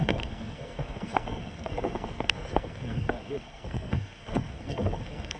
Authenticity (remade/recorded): remade